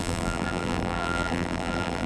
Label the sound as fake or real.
fake